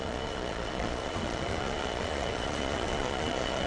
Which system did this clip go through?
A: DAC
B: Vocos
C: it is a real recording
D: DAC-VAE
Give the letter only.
B